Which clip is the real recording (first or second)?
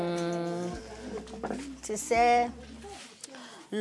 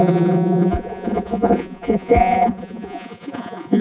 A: first